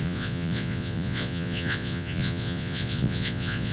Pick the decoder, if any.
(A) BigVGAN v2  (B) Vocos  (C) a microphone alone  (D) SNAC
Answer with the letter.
B